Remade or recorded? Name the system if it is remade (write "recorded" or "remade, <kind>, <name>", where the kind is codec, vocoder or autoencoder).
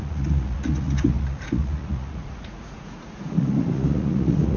remade, vocoder, Vocos